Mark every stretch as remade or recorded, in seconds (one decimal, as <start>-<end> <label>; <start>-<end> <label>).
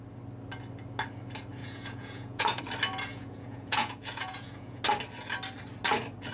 0.0-1.6 recorded; 1.6-2.6 remade; 2.6-3.1 recorded; 3.1-4.8 remade; 4.8-6.3 recorded